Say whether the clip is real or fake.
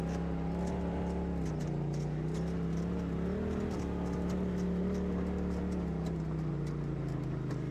real